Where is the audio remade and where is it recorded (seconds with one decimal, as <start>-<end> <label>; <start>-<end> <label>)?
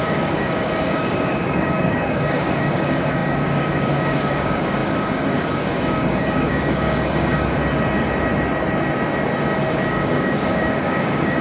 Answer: 0.0-7.6 remade; 7.6-9.9 recorded; 9.9-11.4 remade